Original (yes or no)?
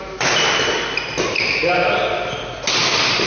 yes